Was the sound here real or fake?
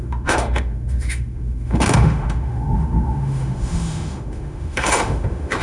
fake